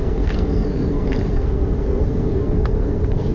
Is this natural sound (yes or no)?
no